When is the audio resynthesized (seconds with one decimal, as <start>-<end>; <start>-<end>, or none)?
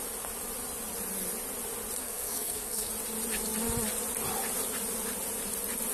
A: 2.0-2.9